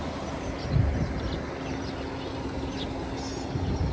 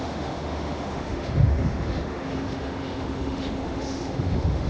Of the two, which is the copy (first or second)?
second